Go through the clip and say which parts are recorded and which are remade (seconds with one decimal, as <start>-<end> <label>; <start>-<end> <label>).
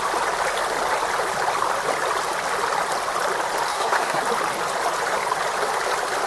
0.0-3.7 recorded; 3.7-4.2 remade; 4.2-6.3 recorded